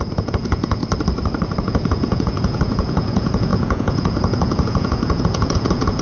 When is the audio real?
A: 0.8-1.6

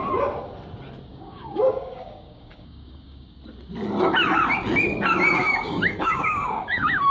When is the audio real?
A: 0.0-1.1; 3.4-5.4

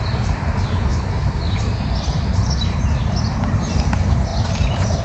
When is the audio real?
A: 0.0-0.9; 2.8-4.3